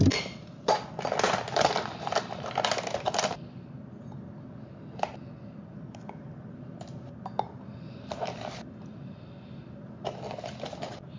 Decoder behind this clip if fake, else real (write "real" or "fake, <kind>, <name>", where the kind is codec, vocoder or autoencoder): real